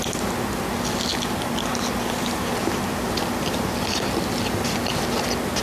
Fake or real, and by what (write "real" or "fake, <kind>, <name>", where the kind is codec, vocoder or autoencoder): real